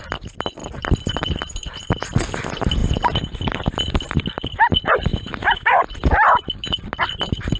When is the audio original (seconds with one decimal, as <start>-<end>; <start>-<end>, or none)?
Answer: 0.0-5.1; 5.8-7.6